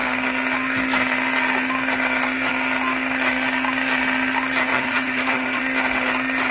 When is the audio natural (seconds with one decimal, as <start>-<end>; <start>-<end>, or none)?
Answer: 0.0-4.7; 5.6-6.5